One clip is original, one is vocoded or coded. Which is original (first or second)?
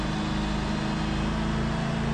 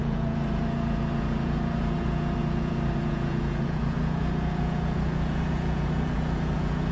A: first